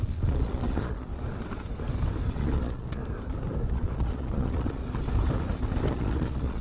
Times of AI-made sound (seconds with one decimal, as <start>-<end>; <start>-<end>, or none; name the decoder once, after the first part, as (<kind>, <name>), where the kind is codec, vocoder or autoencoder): 0.0-1.1 (vocoder, Vocos); 2.3-3.0; 3.7-4.8; 5.9-6.6